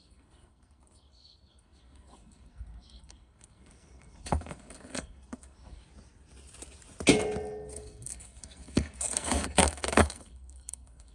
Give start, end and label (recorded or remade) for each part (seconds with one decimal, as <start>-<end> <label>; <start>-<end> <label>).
0.0-5.8 remade; 5.8-7.7 recorded; 7.7-11.1 remade